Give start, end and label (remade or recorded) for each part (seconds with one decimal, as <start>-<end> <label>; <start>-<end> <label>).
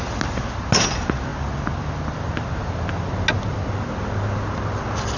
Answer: 0.0-5.2 recorded